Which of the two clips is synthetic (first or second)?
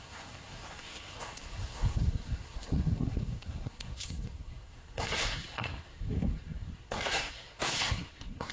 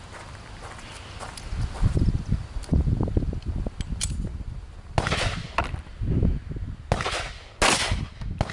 first